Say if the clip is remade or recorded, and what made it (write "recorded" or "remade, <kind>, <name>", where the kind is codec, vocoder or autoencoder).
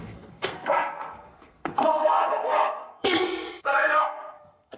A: remade, codec, SNAC